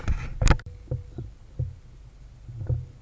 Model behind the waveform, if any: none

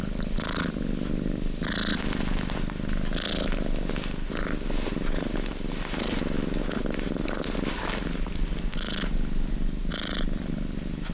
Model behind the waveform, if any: none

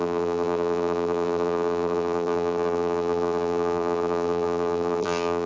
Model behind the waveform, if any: vocoder, BigVGAN v2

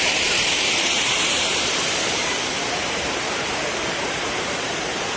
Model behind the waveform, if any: vocoder, BigVGAN v2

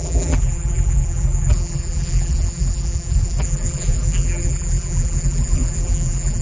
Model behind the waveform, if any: vocoder, BigVGAN v2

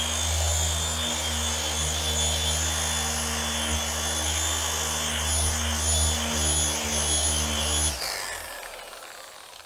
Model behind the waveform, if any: none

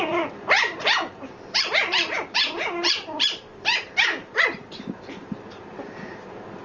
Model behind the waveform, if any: vocoder, BigVGAN v2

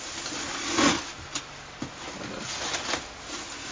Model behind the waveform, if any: none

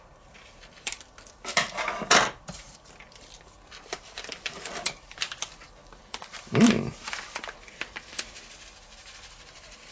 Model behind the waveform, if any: vocoder, BigVGAN v2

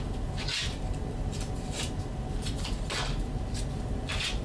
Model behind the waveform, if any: none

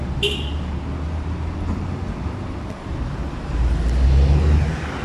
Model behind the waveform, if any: none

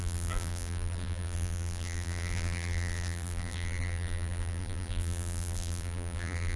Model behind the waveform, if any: vocoder, BigVGAN v2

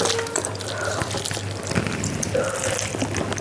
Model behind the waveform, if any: vocoder, BigVGAN v2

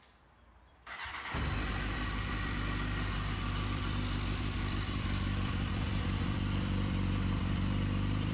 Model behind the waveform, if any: vocoder, BigVGAN v2